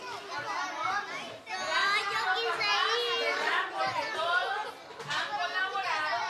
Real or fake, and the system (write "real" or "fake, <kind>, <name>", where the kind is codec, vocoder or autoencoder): real